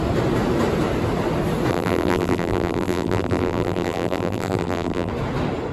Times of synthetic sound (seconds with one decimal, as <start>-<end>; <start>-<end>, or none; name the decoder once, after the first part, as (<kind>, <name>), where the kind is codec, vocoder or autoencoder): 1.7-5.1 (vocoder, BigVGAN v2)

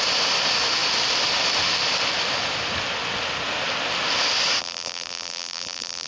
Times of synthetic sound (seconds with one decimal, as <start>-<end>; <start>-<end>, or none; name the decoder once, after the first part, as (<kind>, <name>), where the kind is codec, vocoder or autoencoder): 4.6-6.1 (vocoder, BigVGAN v2)

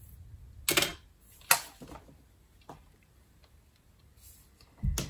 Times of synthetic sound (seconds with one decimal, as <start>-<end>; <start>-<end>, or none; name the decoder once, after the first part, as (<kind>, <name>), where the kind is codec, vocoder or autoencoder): none

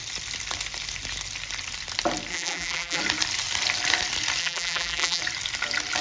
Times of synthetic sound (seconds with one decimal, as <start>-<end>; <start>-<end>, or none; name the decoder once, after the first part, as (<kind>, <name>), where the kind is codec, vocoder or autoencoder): 2.3-3.0 (vocoder, BigVGAN v2); 4.4-5.2

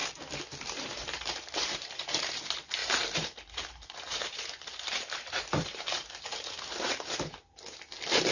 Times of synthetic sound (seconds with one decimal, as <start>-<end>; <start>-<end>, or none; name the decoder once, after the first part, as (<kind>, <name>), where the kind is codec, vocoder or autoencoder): 0.0-2.4 (vocoder, BigVGAN v2); 2.8-7.6

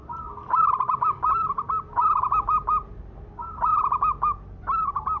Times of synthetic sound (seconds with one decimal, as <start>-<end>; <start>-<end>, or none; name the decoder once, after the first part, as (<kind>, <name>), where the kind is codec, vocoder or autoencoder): none